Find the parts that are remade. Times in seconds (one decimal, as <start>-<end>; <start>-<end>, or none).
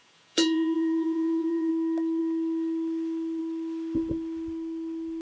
0.0-1.7